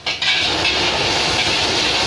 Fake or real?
real